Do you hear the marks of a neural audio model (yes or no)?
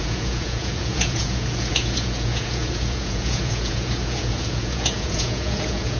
yes